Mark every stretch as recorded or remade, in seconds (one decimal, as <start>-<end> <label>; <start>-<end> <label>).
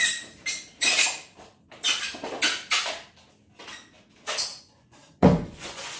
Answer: 0.0-4.5 recorded; 4.5-6.0 remade